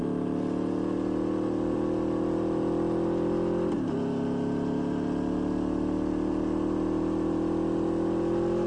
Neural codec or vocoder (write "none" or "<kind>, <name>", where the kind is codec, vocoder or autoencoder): none